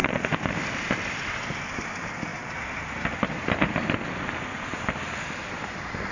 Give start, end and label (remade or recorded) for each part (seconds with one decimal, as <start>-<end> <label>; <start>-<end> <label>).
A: 0.0-6.1 recorded